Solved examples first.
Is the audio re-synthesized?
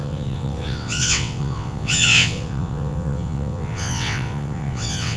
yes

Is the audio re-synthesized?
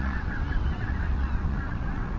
yes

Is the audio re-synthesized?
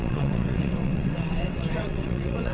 yes